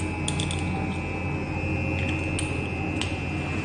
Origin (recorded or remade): recorded